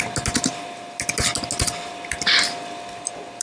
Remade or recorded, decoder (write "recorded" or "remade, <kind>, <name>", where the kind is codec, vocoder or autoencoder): recorded